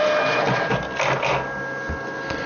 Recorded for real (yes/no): no